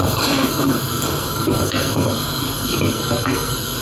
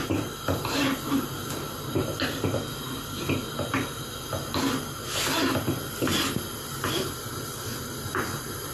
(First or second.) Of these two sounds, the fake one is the first